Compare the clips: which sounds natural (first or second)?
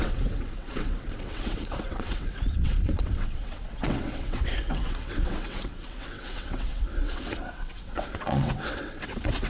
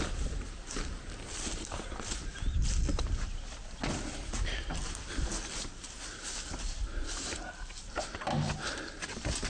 second